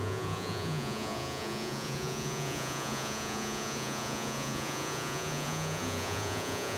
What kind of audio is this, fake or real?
fake